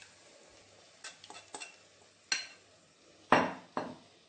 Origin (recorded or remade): recorded